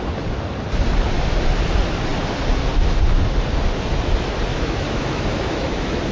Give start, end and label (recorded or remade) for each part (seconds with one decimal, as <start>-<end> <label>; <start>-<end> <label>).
0.0-4.5 recorded; 4.5-6.1 remade